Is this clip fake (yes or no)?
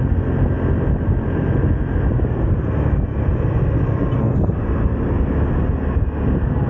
no